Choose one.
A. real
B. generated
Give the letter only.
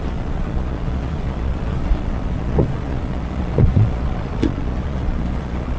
B